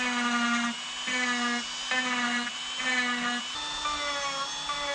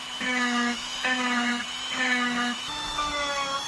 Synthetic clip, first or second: second